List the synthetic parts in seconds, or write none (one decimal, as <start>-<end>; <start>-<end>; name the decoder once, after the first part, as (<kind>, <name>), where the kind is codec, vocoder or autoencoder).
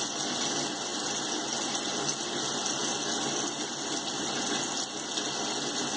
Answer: none